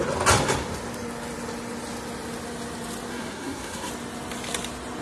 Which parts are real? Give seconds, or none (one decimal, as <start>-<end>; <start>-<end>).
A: 0.0-3.1; 3.9-5.0